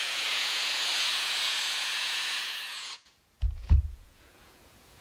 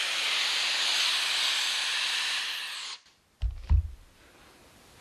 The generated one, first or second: first